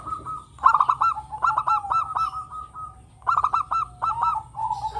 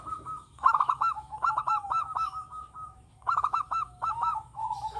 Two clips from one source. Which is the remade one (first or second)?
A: second